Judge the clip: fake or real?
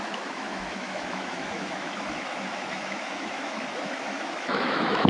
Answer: fake